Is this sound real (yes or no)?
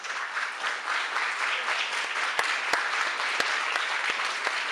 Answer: yes